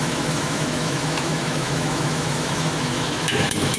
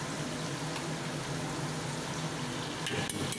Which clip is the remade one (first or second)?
first